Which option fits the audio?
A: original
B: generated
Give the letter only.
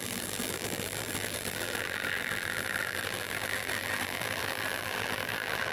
B